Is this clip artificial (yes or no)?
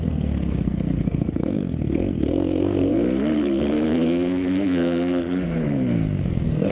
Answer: yes